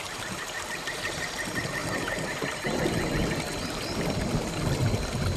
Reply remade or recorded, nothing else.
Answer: recorded